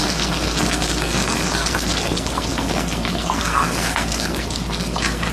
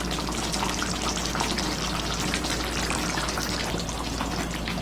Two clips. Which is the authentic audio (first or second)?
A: second